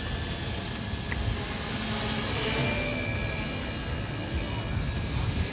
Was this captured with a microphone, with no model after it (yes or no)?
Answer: yes